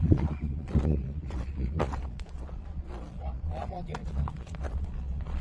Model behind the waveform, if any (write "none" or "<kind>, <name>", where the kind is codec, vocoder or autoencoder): vocoder, Vocos